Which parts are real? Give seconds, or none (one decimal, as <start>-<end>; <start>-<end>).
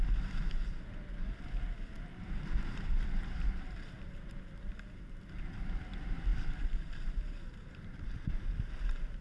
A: 0.0-2.1; 5.3-6.3; 8.7-9.2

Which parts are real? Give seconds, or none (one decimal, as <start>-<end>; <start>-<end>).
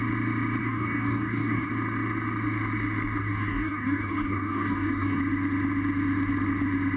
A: 0.0-0.6; 1.7-3.2; 5.2-7.0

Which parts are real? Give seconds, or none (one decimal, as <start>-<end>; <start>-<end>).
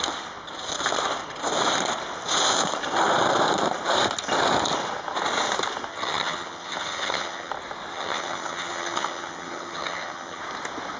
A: 0.0-5.9; 7.5-7.9; 10.4-11.0